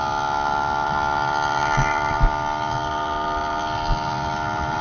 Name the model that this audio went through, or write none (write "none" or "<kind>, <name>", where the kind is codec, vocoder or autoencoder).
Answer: none